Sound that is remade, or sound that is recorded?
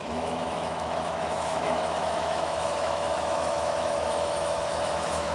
remade